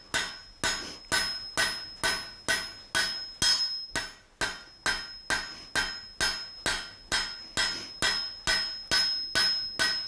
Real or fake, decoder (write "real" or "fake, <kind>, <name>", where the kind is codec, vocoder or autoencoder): real